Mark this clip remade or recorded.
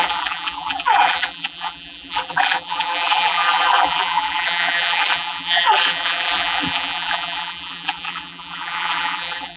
remade